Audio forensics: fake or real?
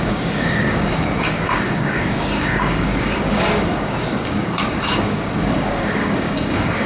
fake